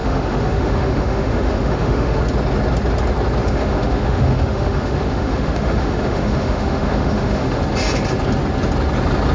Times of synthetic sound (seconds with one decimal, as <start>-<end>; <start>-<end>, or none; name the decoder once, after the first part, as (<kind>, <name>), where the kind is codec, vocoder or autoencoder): 0.0-2.2 (autoencoder, DAC-VAE); 3.4-7.6